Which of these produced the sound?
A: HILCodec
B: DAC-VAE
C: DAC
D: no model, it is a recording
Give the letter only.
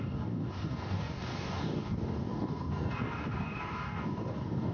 C